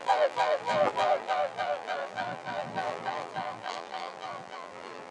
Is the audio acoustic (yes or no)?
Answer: no